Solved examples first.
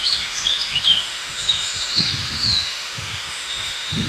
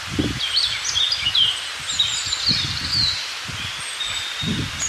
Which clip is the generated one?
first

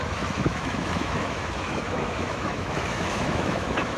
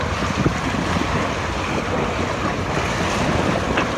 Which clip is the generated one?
first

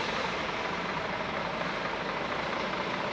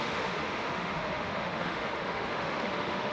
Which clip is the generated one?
second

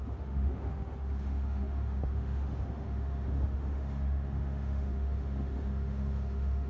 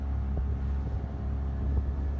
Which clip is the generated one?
first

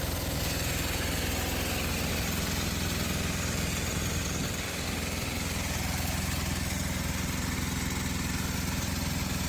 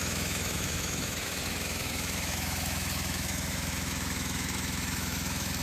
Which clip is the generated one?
second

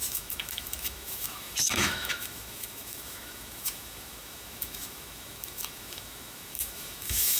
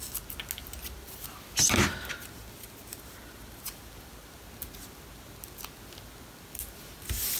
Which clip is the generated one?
first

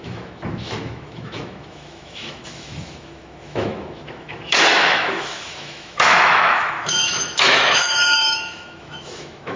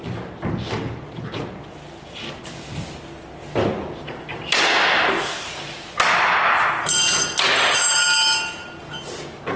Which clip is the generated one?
first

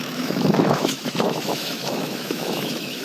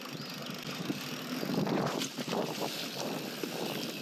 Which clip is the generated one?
first